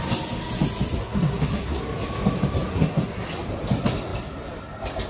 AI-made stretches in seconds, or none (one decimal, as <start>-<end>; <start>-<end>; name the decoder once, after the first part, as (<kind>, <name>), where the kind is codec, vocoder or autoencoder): 1.0-1.8 (codec, SNAC); 2.7-3.2